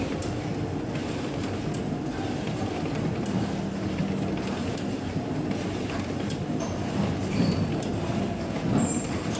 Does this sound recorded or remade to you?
recorded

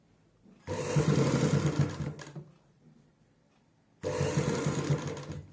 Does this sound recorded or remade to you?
recorded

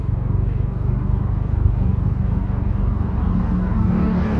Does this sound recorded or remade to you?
remade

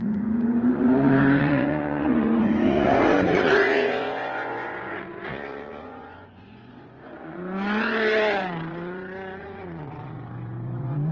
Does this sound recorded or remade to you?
remade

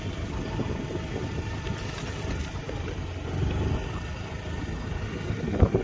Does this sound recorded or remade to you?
recorded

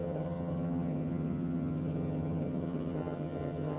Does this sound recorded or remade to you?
remade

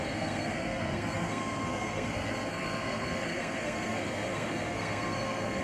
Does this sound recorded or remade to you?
remade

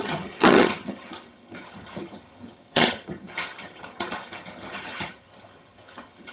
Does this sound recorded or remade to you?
remade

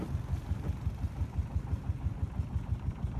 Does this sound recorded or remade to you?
recorded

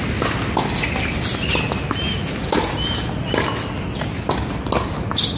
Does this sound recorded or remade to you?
recorded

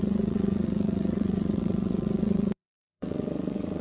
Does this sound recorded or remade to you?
remade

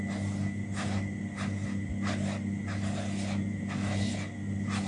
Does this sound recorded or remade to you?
recorded